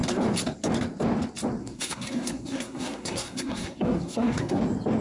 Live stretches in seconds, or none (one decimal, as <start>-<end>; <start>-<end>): 0.0-1.6; 4.6-5.0